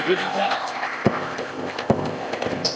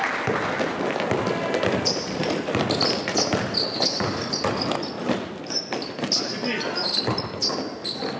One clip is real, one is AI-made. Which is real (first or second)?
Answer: second